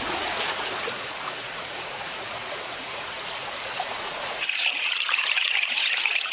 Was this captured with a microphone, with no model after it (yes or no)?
no